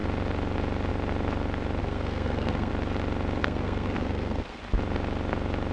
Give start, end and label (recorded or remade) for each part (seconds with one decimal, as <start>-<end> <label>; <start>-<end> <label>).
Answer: 0.0-1.8 recorded; 1.8-2.7 remade; 2.7-3.4 recorded; 3.4-4.6 remade; 4.6-5.7 recorded